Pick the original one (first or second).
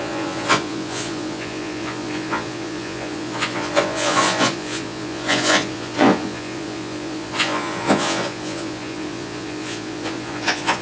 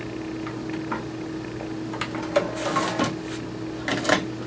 second